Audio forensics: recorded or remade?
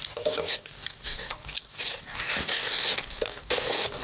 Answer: remade